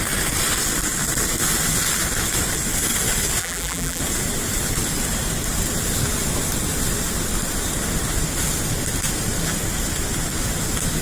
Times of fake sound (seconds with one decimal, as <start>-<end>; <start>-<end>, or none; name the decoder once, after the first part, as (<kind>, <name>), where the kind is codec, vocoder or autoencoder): 3.4-4.0 (vocoder, BigVGAN v2)